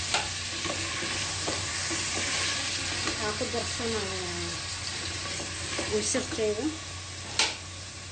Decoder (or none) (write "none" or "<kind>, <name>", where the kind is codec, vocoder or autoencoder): none